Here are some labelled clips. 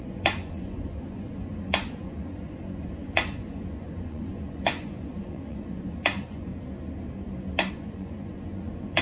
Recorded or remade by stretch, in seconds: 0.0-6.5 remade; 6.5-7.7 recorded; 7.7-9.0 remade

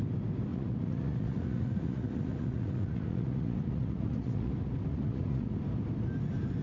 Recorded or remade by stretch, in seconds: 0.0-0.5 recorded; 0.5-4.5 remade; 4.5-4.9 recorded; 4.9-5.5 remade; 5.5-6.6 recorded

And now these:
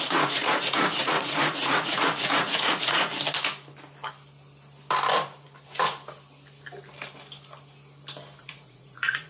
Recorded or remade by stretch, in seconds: 0.0-3.1 remade; 3.1-8.4 recorded; 8.4-9.3 remade